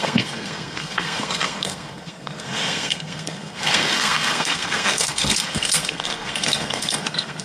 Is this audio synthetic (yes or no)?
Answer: yes